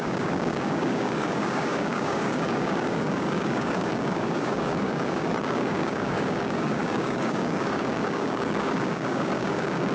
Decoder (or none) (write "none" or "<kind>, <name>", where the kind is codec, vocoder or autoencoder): codec, DAC